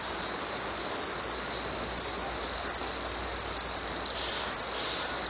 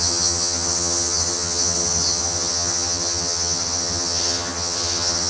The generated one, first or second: second